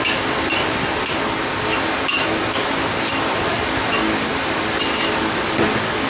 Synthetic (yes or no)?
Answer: no